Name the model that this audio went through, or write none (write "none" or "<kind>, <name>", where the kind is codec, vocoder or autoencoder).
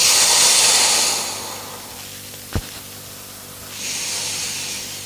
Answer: none